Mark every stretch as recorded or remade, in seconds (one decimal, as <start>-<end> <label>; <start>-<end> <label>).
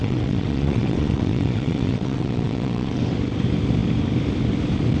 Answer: 0.0-3.0 remade; 3.0-5.0 recorded